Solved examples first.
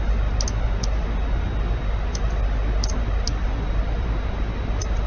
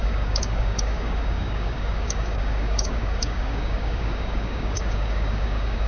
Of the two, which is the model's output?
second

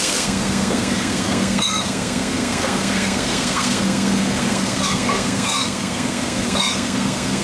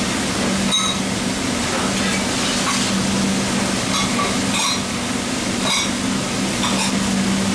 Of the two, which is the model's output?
first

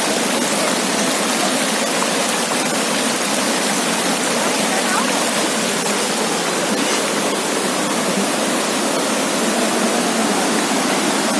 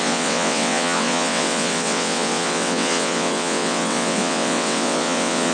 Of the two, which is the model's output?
second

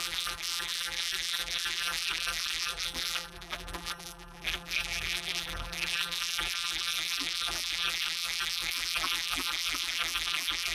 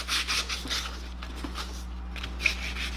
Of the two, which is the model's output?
first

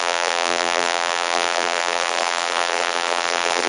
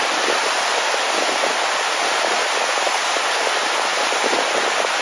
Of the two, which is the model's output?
first